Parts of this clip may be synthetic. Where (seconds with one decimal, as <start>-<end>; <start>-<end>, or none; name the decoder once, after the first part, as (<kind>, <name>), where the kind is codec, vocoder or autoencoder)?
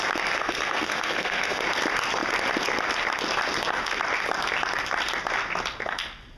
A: 0.4-1.6 (codec, SNAC)